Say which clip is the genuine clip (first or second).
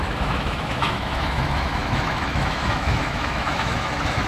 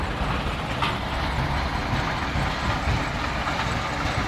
second